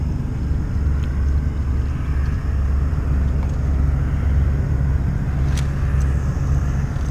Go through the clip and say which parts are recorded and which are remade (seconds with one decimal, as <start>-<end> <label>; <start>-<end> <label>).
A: 0.0-7.1 recorded